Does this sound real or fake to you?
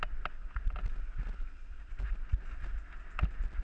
real